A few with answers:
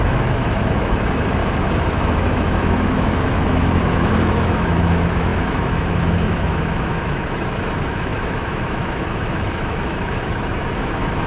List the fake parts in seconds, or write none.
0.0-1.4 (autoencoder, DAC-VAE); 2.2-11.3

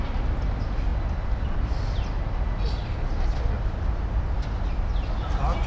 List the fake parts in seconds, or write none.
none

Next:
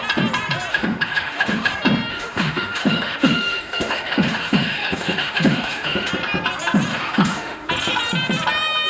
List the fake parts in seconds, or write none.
0.7-1.7 (autoencoder, DAC-VAE); 2.1-6.1; 6.9-7.7

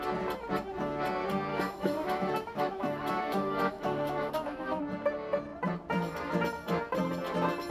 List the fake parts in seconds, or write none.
1.5-4.8 (autoencoder, DAC-VAE)